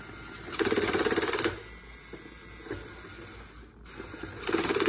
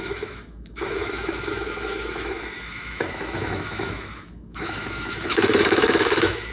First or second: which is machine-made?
second